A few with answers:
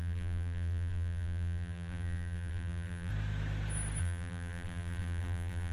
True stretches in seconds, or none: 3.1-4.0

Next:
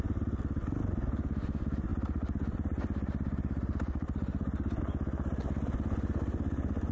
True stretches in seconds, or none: 0.0-1.9; 4.8-6.9